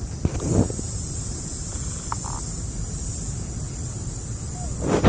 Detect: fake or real real